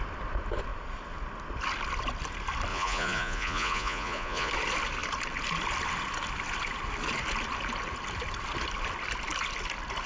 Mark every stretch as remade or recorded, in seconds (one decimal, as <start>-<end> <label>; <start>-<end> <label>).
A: 0.0-2.7 recorded; 2.7-4.5 remade; 4.5-10.1 recorded